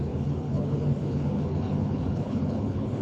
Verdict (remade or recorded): remade